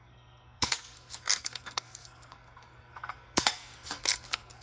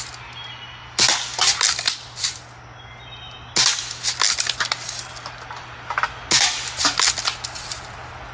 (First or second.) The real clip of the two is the second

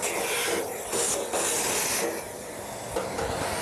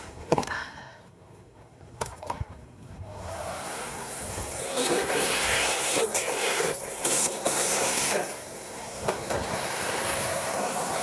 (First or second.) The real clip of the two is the first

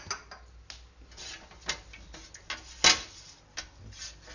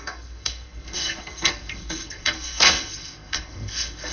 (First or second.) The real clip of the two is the first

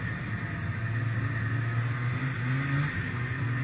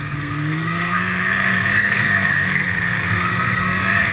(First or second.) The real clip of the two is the first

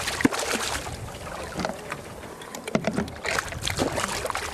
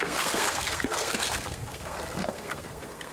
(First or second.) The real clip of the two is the first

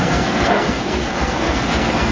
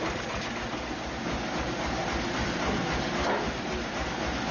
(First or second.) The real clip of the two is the second